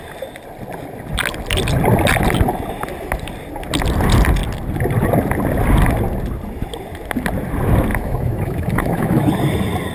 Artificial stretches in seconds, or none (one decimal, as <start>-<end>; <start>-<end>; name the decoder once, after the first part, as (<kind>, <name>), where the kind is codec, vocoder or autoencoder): 7.9-9.3 (autoencoder, DAC-VAE)